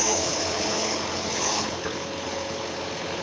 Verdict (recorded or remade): remade